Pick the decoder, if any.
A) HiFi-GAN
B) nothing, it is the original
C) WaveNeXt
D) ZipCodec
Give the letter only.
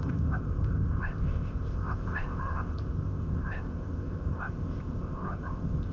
D